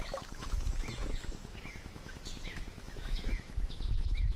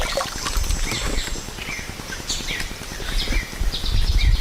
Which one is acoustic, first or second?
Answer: second